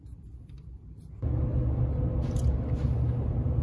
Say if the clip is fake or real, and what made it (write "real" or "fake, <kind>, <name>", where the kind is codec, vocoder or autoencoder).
real